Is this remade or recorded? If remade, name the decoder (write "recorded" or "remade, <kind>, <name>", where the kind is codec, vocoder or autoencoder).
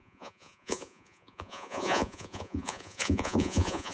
remade, vocoder, Vocos